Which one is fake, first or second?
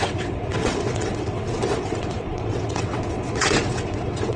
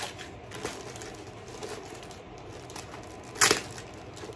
first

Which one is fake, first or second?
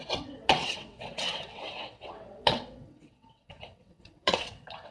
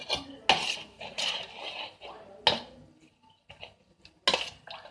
first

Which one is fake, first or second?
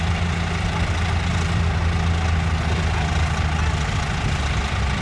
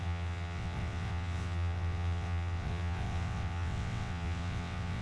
second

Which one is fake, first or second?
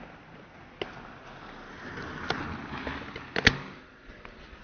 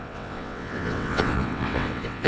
second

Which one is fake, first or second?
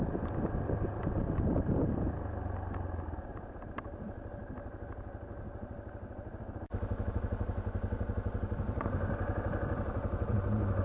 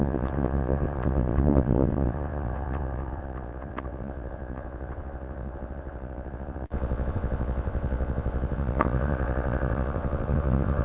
second